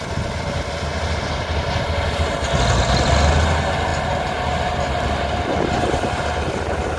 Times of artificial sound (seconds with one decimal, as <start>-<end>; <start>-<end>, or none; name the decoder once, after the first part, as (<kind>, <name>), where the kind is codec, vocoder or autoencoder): none